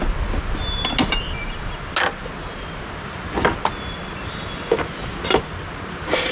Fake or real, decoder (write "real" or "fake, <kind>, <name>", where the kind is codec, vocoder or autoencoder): real